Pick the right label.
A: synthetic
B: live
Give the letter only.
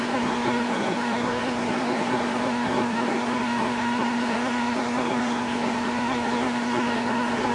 A